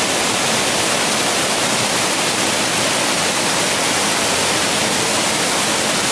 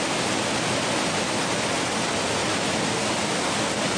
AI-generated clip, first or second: first